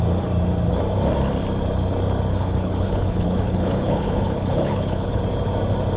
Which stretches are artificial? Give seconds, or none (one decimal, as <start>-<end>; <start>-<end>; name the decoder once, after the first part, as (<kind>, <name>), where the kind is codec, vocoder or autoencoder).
2.3-5.2 (codec, HILCodec)